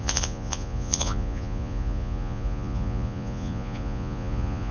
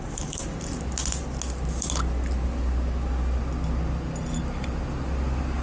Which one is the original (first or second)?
second